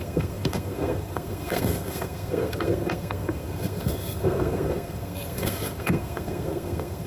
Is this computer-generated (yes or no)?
yes